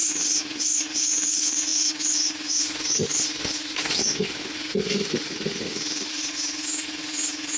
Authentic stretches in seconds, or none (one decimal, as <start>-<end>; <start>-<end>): none